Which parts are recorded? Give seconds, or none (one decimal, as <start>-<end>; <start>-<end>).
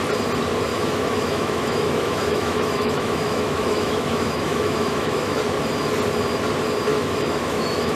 0.0-0.7; 5.4-6.9